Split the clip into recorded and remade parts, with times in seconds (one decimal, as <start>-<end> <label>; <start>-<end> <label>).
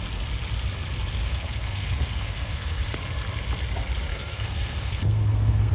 0.0-1.2 recorded; 1.2-3.0 remade; 3.0-4.1 recorded; 4.1-5.7 remade